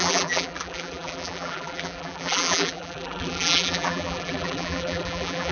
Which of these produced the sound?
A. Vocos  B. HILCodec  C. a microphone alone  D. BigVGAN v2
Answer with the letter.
D